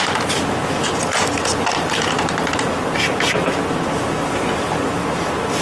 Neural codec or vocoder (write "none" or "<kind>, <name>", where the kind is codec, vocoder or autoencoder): none